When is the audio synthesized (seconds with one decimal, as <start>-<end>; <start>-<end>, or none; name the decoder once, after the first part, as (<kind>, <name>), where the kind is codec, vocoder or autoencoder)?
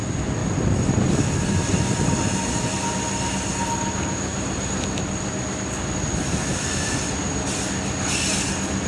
none